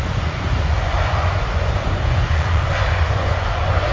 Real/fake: fake